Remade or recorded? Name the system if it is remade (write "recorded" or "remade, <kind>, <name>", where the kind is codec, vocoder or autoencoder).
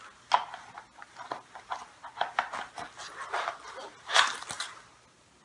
recorded